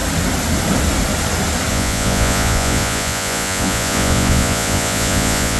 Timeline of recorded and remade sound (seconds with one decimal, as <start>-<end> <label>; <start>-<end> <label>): 0.0-1.7 recorded; 1.7-5.6 remade